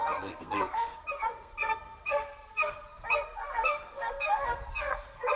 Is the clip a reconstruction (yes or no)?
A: yes